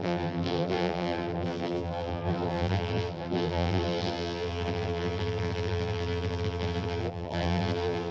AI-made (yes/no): yes